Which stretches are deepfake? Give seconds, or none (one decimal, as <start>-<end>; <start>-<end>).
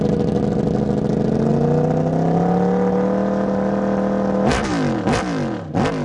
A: none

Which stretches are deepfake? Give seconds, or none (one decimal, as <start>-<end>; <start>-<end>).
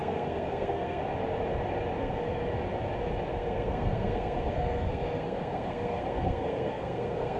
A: 0.0-1.0; 2.0-2.5; 3.3-7.4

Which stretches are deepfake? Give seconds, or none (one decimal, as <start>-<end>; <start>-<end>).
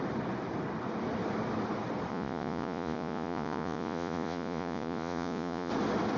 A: 2.1-5.7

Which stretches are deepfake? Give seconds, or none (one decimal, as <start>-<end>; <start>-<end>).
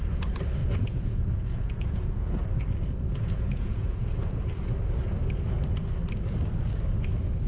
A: 0.6-2.4; 3.1-4.5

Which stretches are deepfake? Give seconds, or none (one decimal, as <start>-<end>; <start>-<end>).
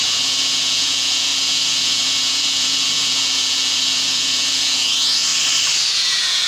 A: 0.0-5.3; 5.9-6.5